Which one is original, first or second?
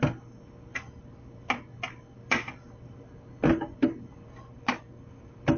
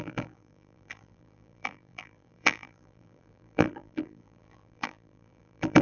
first